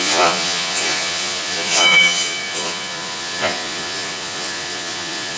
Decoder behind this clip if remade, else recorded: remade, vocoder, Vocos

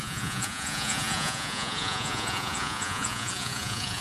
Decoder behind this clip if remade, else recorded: remade, vocoder, Vocos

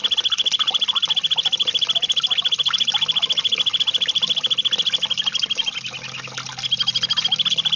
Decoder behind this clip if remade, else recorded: recorded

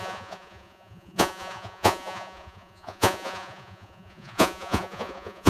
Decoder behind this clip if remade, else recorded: remade, vocoder, Vocos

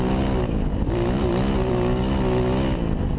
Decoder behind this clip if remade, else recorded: recorded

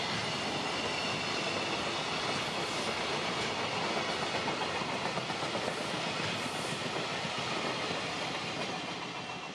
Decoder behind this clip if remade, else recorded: recorded